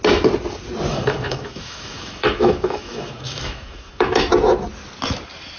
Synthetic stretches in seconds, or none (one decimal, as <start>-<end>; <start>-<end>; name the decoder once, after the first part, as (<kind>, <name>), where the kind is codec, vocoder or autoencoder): 0.9-4.3 (autoencoder, DAC-VAE)